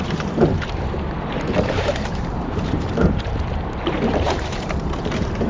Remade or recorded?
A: remade